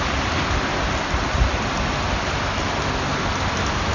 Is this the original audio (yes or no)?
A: yes